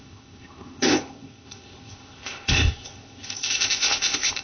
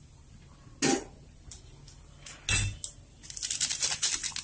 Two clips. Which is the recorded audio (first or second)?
second